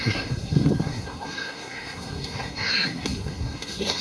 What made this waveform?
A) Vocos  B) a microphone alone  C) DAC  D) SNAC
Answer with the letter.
D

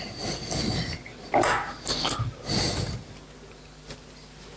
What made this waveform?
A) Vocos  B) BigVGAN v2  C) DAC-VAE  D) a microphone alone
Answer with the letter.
D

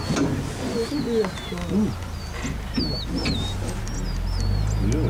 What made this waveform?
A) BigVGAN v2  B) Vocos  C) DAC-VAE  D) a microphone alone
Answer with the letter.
D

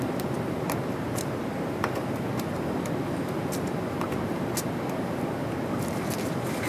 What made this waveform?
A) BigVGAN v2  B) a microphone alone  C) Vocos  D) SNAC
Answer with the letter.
B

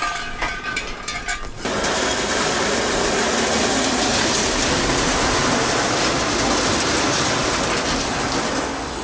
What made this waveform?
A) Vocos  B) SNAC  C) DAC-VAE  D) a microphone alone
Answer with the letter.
D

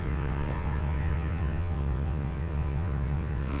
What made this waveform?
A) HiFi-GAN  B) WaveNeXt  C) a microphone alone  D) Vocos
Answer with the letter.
B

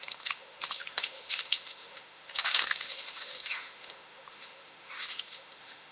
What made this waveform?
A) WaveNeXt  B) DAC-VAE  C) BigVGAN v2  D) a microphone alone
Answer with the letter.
B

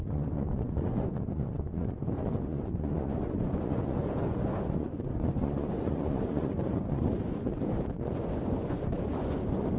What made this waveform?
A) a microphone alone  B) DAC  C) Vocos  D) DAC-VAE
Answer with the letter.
C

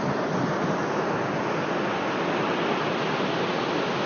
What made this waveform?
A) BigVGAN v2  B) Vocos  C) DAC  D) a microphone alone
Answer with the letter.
D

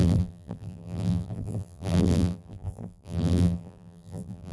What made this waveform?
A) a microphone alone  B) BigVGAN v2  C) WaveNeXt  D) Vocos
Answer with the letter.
B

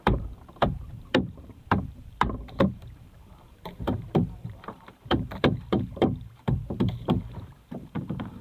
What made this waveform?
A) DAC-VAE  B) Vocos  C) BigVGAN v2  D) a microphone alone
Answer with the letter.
C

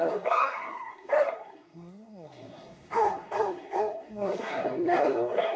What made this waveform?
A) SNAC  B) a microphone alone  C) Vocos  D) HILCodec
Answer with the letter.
A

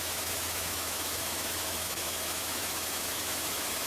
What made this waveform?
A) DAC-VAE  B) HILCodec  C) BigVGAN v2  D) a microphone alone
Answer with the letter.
A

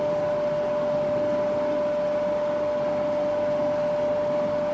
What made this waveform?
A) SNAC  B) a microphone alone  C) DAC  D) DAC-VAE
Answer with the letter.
B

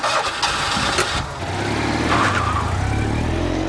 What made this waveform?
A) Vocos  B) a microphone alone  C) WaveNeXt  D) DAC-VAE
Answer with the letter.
B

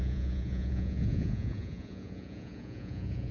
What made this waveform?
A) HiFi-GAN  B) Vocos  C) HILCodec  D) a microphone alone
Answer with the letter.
B